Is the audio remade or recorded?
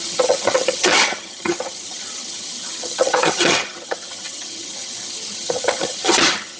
remade